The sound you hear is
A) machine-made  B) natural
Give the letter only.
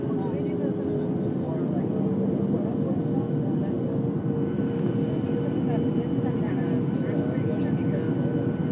B